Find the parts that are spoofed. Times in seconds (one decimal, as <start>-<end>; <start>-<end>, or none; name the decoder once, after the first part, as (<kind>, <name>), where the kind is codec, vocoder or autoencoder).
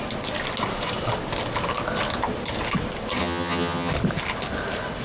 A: 3.2-3.9 (vocoder, HiFi-GAN)